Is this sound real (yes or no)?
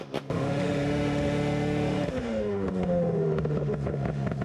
no